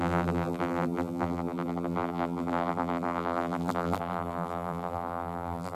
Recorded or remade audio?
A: remade